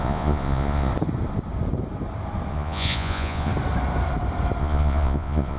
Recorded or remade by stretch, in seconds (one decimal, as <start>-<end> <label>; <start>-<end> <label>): 0.0-0.9 remade; 0.9-2.5 recorded; 2.5-3.5 remade; 3.5-4.6 recorded; 4.6-5.6 remade